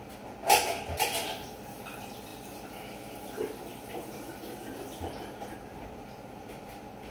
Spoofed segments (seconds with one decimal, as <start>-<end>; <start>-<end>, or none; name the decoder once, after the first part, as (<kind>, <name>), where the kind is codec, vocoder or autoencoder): none